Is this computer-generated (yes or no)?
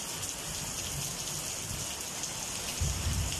no